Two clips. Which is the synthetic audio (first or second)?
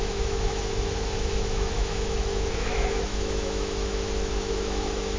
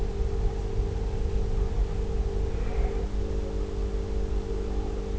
first